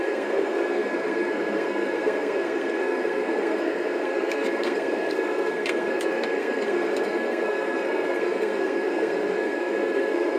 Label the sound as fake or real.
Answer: fake